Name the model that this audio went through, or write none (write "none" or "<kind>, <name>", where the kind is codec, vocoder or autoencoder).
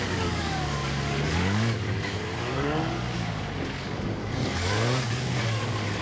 codec, DAC